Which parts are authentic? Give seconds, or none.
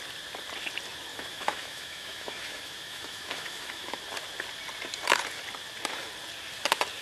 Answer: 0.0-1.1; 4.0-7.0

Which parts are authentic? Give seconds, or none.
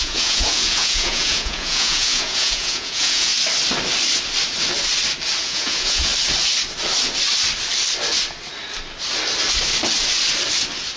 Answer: 3.3-5.4; 6.1-11.0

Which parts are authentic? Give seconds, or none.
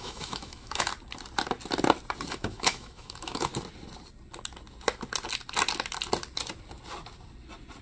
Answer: 0.9-2.3; 3.5-7.8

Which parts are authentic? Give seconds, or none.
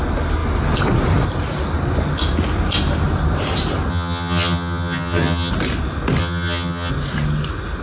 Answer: 0.0-3.9; 5.5-6.2; 6.9-7.8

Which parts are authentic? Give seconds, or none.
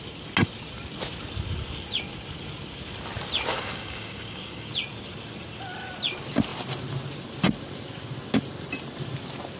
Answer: 0.0-3.5; 4.7-9.6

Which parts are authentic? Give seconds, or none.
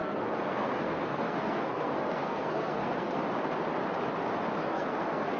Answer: 3.2-4.6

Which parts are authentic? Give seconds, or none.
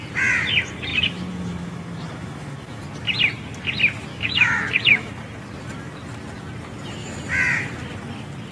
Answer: 0.0-0.9; 2.8-4.1; 5.1-8.5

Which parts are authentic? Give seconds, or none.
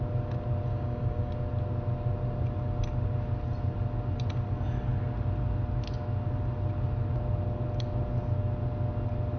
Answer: 0.0-0.7; 1.3-9.4